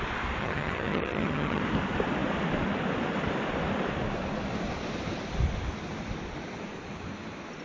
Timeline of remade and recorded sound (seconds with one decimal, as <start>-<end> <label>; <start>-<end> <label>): 0.0-0.4 recorded; 0.4-1.6 remade; 1.6-7.6 recorded